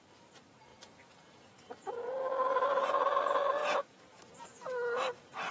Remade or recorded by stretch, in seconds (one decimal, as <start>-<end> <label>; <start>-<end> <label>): 0.0-0.7 recorded; 0.7-2.1 remade; 2.1-3.6 recorded; 3.6-4.2 remade; 4.2-5.5 recorded